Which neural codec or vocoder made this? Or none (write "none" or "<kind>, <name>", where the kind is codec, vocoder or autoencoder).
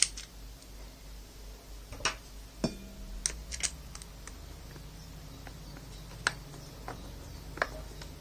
none